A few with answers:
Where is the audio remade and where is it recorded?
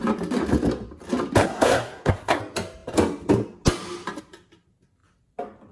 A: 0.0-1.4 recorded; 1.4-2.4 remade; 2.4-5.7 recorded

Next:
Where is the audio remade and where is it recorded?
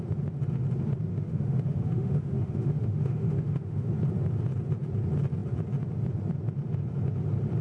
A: 0.0-1.1 recorded; 1.1-3.9 remade; 3.9-7.6 recorded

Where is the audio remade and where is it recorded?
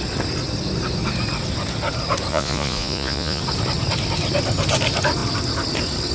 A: 0.0-2.3 recorded; 2.3-3.4 remade; 3.4-6.1 recorded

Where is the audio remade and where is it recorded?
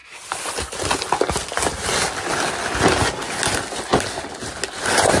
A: 0.0-5.2 recorded